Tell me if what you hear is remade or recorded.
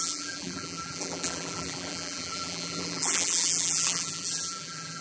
remade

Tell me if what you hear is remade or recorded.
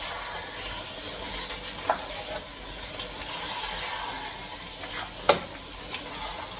recorded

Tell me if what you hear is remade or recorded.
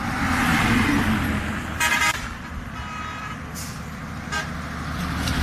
recorded